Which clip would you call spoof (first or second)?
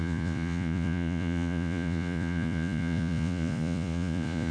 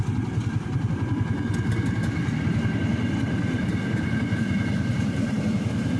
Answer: first